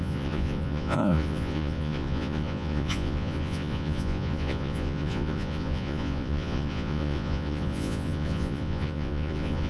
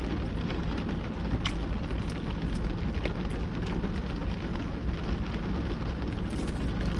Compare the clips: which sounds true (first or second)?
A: second